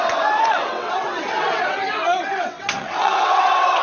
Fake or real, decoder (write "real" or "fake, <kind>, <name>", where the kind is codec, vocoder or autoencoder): fake, vocoder, WaveNeXt